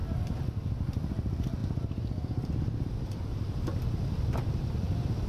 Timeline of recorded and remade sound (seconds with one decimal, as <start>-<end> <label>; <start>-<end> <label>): 0.0-5.3 recorded